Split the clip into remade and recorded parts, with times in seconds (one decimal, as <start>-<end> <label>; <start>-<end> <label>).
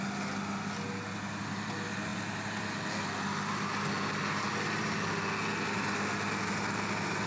0.0-7.3 recorded